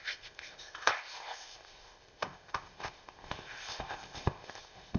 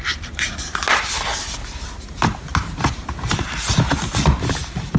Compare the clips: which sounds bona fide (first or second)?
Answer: second